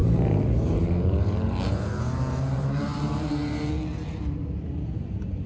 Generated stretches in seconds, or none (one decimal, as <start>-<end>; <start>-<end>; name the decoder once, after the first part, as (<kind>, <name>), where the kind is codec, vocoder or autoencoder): 0.0-5.5 (vocoder, BigVGAN v2)